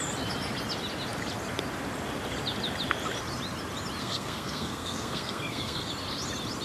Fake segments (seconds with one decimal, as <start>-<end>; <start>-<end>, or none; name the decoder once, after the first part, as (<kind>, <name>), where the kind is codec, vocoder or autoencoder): 4.0-5.9 (codec, SNAC)